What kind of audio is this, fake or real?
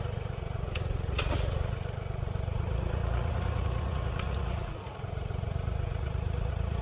fake